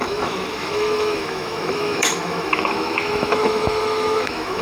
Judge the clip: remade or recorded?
remade